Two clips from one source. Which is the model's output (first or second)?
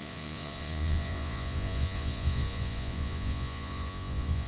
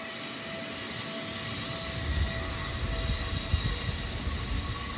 first